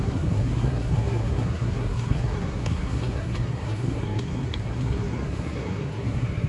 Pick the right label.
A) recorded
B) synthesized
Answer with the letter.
B